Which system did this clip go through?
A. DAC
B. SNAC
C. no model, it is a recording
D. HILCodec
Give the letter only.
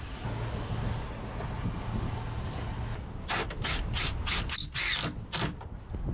C